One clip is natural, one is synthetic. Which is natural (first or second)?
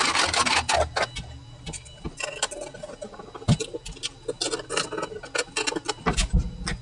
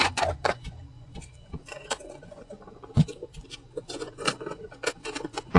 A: first